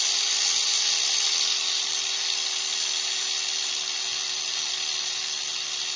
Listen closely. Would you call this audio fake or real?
real